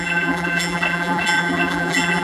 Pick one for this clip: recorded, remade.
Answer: remade